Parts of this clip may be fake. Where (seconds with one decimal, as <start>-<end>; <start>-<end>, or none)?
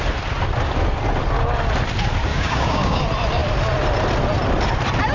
2.3-3.0